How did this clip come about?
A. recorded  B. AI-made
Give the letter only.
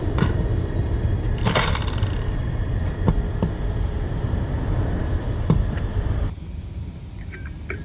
B